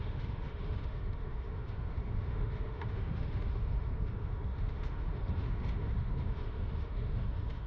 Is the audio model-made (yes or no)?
yes